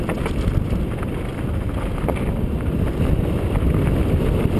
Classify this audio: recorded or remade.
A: recorded